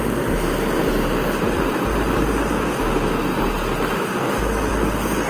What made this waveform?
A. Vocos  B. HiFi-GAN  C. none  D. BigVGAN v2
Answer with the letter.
C